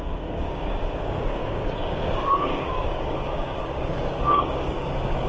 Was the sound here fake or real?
fake